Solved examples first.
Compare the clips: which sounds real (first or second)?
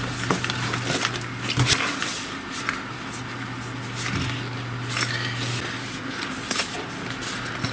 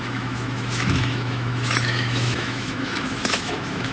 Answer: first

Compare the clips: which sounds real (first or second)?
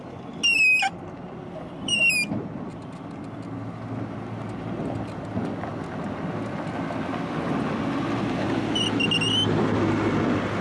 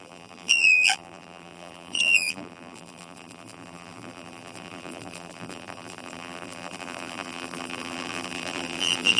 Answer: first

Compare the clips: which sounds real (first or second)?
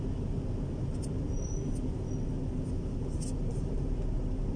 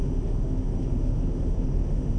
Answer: first